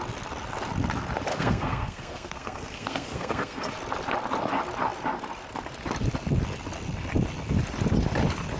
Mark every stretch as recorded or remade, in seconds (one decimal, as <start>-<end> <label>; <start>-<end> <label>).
0.0-1.3 recorded; 1.3-3.7 remade; 3.7-8.6 recorded